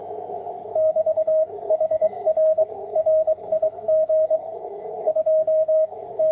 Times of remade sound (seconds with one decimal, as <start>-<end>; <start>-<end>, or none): 0.5-6.3